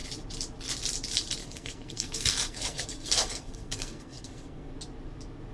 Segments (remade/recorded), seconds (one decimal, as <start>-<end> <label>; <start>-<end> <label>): 0.0-1.4 recorded; 1.4-4.7 remade; 4.7-5.5 recorded